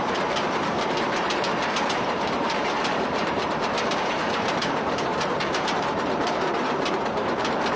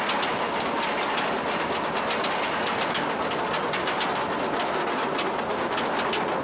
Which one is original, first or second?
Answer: second